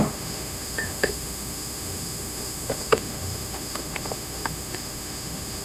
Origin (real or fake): fake